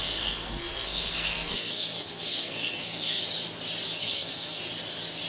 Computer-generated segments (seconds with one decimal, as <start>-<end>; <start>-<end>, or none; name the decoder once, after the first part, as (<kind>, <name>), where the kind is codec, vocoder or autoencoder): 0.0-3.2 (codec, SNAC); 4.0-4.6